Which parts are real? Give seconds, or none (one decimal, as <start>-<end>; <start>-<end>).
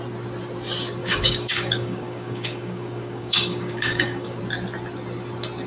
0.0-1.0; 4.4-5.7